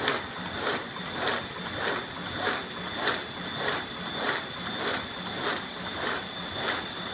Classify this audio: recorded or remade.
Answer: recorded